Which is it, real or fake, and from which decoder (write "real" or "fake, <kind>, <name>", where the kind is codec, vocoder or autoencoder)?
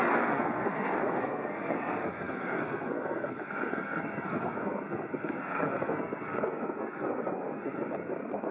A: fake, codec, SNAC